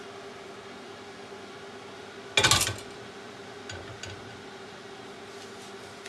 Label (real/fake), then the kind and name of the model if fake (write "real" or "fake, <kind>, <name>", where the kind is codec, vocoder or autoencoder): real